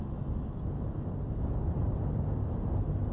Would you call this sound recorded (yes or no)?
yes